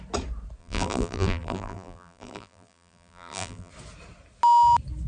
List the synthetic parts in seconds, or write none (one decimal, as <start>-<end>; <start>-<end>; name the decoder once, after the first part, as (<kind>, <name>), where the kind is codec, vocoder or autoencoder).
0.6-3.7 (vocoder, BigVGAN v2)